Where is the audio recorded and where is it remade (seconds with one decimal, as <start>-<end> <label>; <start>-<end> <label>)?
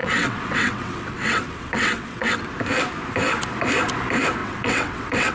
0.0-2.4 remade; 2.4-4.4 recorded; 4.4-5.3 remade